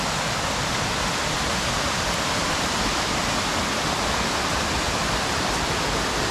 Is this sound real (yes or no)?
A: yes